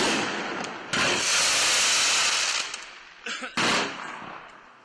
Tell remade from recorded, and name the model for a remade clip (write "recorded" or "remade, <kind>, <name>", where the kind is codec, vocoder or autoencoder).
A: recorded